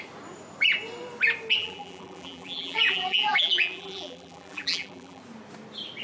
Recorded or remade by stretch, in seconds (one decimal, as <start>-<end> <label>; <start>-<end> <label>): 0.0-1.6 recorded; 1.6-5.2 remade; 5.2-6.0 recorded